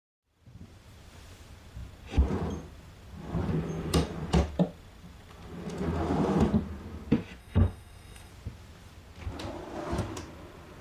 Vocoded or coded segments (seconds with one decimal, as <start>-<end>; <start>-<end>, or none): 7.4-8.3